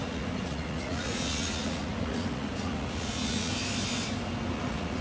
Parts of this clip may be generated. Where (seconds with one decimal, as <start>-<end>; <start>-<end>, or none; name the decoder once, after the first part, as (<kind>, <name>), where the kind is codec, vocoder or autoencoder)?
0.0-3.5 (vocoder, Vocos); 4.5-5.0